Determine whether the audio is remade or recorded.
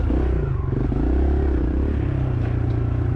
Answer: recorded